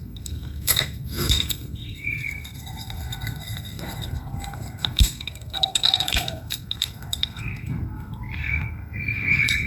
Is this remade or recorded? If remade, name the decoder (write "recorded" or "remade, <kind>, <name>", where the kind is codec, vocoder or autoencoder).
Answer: remade, codec, SNAC